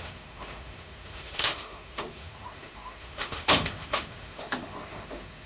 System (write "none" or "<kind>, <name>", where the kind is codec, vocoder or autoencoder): autoencoder, DAC-VAE